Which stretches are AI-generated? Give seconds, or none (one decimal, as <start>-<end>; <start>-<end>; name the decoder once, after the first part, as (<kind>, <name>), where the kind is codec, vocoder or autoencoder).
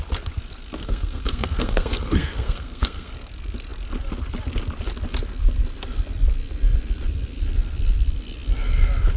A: 0.8-3.1 (codec, SNAC)